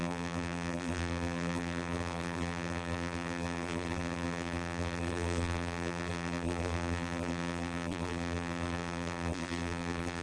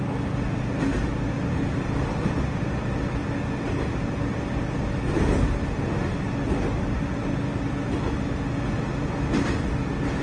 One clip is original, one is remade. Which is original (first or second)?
second